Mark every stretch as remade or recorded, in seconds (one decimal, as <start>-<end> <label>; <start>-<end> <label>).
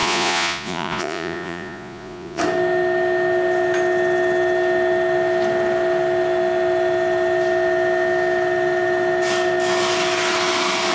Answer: 0.0-2.4 remade; 2.4-10.9 recorded